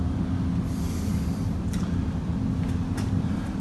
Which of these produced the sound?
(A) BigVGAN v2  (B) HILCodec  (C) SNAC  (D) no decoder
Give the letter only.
D